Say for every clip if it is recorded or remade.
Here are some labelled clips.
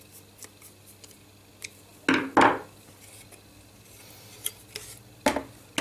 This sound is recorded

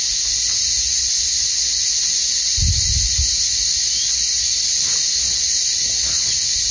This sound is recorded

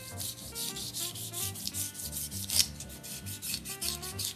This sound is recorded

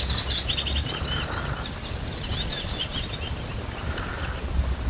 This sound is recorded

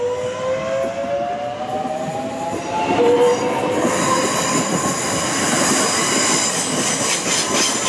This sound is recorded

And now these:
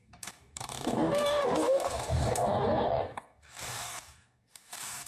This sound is remade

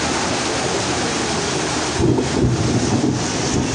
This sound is recorded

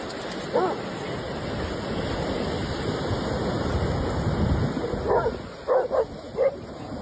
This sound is recorded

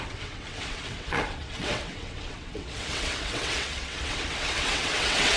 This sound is remade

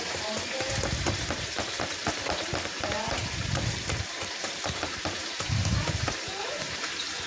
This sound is remade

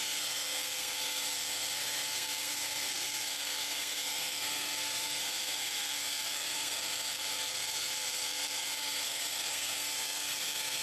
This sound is remade